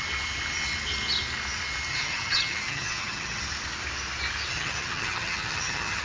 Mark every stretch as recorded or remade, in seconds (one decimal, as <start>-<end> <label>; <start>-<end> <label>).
0.0-1.9 recorded; 1.9-3.4 remade; 3.4-4.5 recorded; 4.5-6.0 remade